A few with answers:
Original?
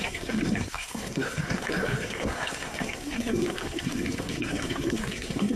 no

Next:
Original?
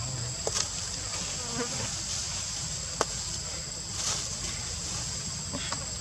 yes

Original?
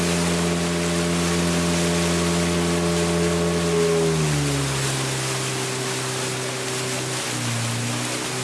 yes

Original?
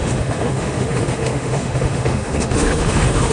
no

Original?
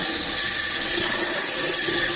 yes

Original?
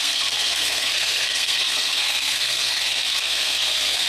no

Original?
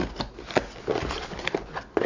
yes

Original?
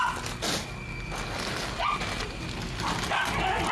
yes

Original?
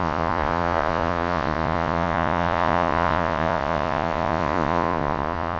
no